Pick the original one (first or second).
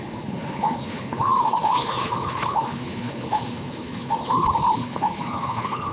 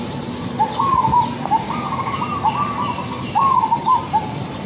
second